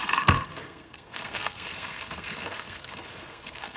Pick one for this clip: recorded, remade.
remade